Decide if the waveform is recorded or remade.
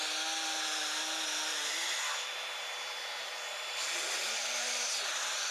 recorded